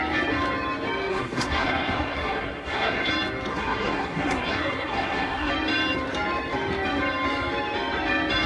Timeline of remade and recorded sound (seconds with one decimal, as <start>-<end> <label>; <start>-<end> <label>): 0.0-1.1 recorded; 1.1-3.1 remade; 3.1-3.5 recorded; 3.5-5.5 remade; 5.5-8.5 recorded